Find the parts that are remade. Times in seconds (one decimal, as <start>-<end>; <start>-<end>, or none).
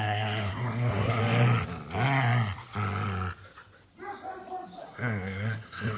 0.0-1.2; 4.8-6.0